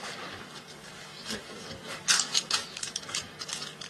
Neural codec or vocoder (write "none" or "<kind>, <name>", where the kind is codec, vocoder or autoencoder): codec, DAC